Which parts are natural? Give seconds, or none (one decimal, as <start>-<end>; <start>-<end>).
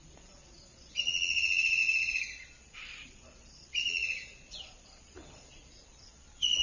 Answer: none